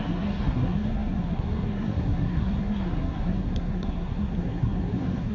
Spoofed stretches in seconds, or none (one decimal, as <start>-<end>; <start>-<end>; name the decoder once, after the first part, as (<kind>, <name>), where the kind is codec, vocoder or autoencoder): 0.0-5.3 (codec, SNAC)